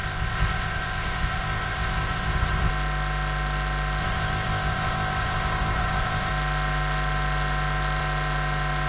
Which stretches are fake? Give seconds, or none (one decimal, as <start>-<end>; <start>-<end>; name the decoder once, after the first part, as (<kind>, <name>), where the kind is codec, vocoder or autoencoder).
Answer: 0.0-2.7 (codec, ZipCodec); 4.0-6.3